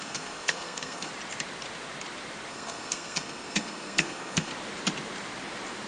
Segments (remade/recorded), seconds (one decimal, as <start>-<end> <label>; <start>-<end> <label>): 0.0-1.1 remade; 1.1-2.5 recorded; 2.5-4.5 remade; 4.5-5.9 recorded